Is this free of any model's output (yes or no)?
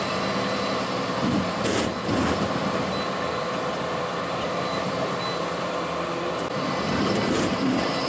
yes